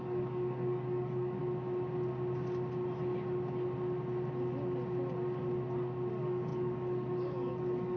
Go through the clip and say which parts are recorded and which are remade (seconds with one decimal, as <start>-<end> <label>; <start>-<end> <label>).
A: 0.0-1.4 remade; 1.4-6.1 recorded; 6.1-8.0 remade